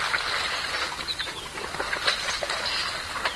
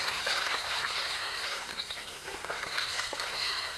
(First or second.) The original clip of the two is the first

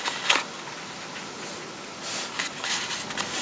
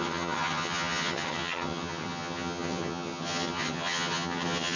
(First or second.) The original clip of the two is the first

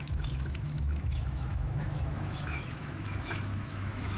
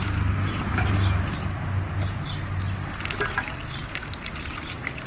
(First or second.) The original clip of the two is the second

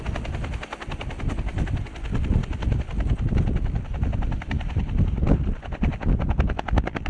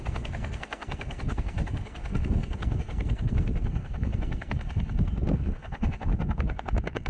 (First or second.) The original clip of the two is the first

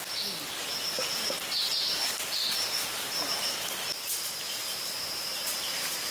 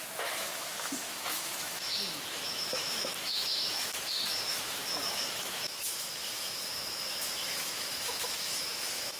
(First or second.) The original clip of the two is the first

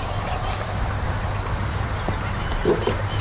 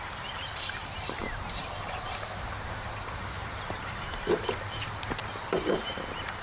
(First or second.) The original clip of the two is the first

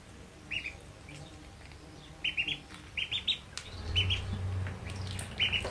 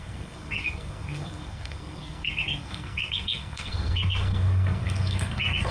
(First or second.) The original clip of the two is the first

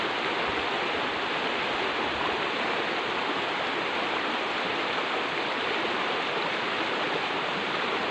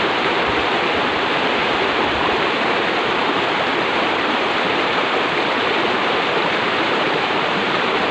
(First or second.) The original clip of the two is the first